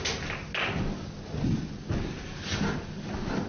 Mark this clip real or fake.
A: real